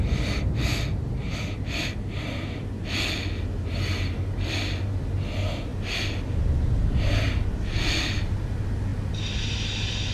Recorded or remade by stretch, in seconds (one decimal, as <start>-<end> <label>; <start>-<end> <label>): 0.0-10.1 recorded